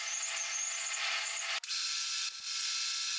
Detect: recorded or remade recorded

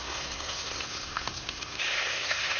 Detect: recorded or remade remade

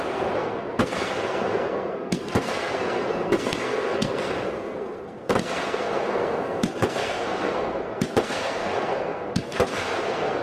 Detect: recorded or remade remade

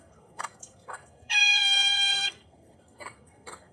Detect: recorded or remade remade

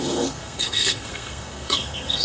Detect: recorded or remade remade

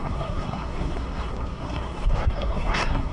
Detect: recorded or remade remade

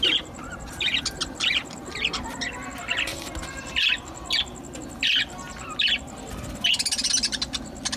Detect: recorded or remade recorded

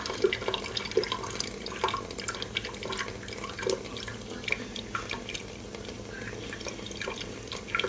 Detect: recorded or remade recorded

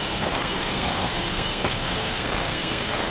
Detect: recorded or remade remade